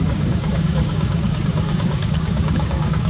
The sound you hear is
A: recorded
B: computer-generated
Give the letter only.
B